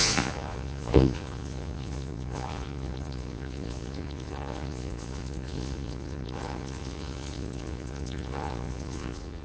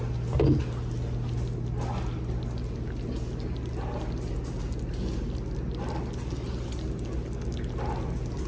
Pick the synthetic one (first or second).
first